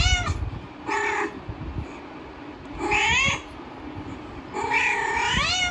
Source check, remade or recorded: recorded